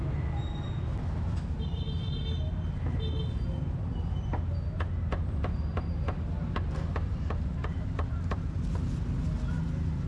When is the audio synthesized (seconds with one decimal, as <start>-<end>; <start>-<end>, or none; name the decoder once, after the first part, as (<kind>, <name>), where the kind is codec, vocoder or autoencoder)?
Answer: 5.7-6.3 (vocoder, BigVGAN v2)